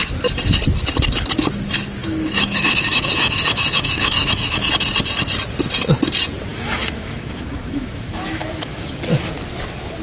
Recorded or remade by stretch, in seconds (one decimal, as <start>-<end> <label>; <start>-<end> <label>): 0.0-2.0 recorded; 2.0-4.7 remade; 4.7-6.5 recorded; 6.5-8.9 remade; 8.9-10.0 recorded